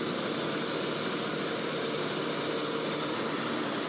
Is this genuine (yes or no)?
yes